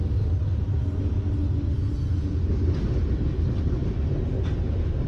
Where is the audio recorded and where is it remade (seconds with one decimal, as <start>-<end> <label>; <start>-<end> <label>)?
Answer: 0.0-3.1 recorded; 3.1-3.8 remade; 3.8-5.1 recorded